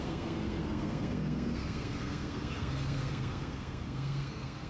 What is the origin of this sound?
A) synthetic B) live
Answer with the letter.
A